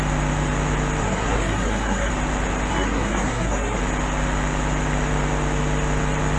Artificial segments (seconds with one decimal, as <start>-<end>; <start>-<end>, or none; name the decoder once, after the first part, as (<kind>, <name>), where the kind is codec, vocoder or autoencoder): 1.0-2.1 (codec, SNAC); 2.7-3.8